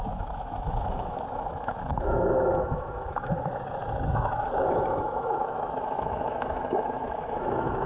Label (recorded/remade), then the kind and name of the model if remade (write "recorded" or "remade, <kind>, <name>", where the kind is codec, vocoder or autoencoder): remade, autoencoder, DAC-VAE